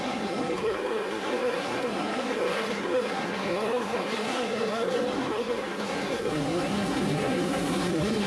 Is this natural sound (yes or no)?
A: no